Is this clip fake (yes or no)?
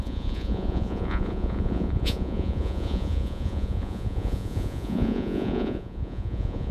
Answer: yes